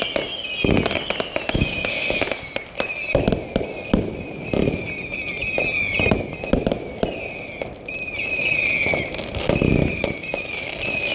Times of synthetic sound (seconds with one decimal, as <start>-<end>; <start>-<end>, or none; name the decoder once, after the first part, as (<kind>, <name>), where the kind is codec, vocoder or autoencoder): none